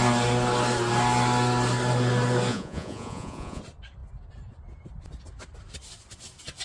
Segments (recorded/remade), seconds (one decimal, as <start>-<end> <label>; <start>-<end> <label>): 0.0-2.5 recorded; 2.5-3.6 remade; 3.6-6.6 recorded